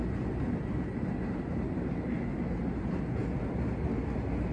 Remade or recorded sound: recorded